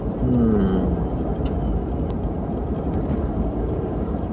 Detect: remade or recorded recorded